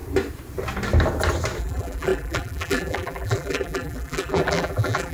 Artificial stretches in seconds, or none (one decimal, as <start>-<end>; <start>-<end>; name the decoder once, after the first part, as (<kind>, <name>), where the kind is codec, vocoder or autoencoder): 1.6-5.1 (vocoder, BigVGAN v2)